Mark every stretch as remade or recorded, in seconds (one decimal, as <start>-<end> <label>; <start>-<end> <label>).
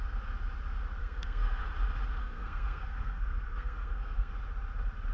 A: 0.0-1.0 recorded; 1.0-1.6 remade; 1.6-2.2 recorded; 2.2-4.3 remade; 4.3-5.1 recorded